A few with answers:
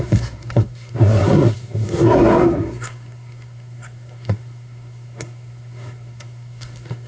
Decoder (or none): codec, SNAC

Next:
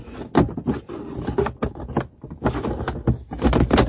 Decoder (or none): none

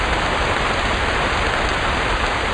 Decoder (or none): none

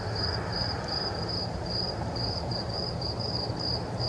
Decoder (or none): vocoder, BigVGAN v2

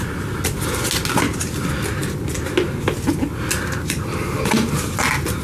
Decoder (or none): none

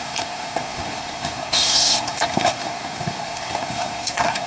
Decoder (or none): codec, SNAC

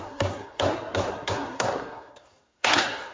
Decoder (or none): codec, SNAC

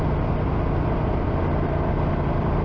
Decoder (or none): none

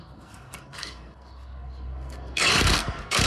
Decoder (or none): codec, SNAC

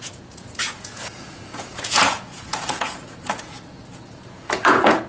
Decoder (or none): vocoder, Vocos